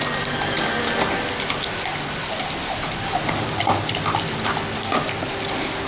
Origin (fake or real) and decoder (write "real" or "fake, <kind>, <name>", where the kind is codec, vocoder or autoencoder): real